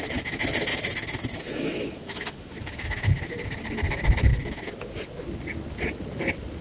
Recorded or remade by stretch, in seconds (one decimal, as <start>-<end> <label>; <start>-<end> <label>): 0.0-0.7 recorded; 0.7-3.3 remade; 3.3-4.3 recorded; 4.3-4.9 remade; 4.9-6.6 recorded